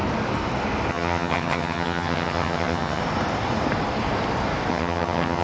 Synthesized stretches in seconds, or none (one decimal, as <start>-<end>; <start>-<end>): 0.9-3.0; 4.7-5.4